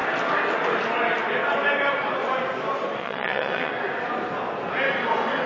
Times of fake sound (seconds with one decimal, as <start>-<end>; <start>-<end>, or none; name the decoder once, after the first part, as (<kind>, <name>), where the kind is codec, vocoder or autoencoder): 3.0-3.7 (vocoder, WaveNeXt)